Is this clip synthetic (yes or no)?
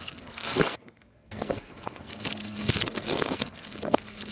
yes